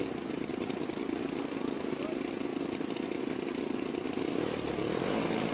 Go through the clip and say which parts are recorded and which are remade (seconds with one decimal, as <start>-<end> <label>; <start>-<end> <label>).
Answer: 0.0-5.5 recorded